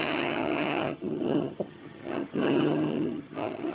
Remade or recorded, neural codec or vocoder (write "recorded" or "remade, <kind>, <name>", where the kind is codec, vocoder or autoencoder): remade, vocoder, HiFi-GAN